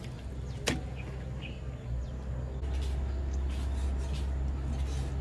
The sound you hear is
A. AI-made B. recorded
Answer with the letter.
B